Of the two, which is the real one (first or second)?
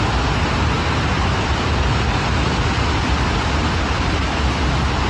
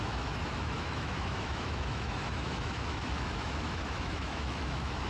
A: first